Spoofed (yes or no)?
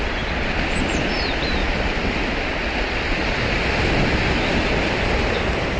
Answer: no